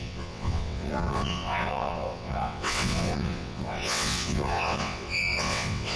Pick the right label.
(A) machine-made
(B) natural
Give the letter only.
A